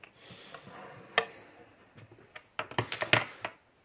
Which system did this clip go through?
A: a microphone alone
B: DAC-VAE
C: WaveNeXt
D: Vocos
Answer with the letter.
A